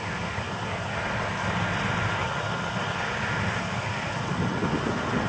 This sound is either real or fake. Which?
fake